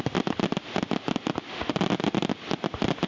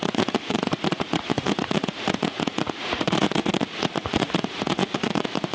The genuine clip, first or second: first